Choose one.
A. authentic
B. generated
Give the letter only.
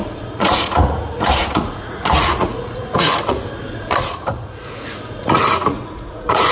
B